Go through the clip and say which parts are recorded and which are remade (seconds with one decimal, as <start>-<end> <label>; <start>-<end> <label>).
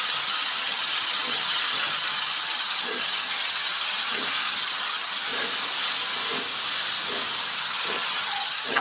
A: 0.0-5.3 remade; 5.3-7.6 recorded; 7.6-8.8 remade